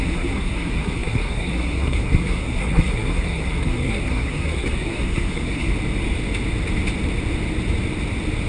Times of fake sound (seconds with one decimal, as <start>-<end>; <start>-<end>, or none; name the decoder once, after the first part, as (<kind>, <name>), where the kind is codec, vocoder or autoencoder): 0.0-5.7 (codec, SNAC)